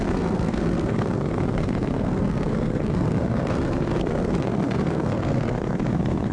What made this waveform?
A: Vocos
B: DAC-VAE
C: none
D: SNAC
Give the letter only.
D